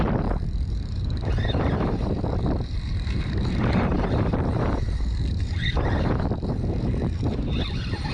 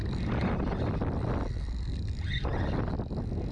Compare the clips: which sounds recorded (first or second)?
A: second